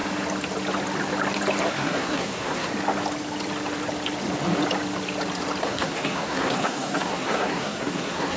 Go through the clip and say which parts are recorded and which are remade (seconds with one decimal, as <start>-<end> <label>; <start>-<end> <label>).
0.0-1.7 recorded; 1.7-2.7 remade; 2.7-5.6 recorded; 5.6-8.4 remade